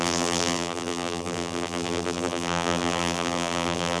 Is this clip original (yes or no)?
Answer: no